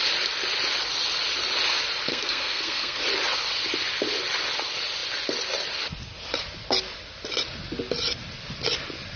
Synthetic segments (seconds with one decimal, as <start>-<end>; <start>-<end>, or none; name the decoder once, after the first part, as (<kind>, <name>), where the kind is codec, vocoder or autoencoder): 2.1-3.0 (codec, SNAC)